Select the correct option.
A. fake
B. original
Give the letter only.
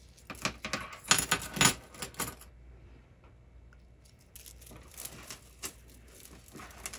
B